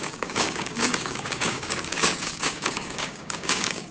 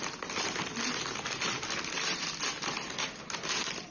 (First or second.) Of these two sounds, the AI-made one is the first